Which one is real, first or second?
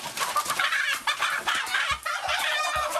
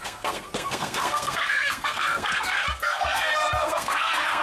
first